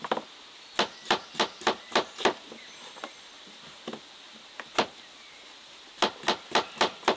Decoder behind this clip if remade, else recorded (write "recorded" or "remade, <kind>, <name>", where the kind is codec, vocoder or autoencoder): recorded